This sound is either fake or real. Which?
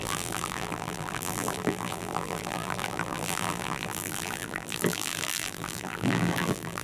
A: fake